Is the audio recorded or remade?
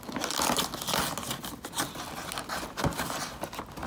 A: recorded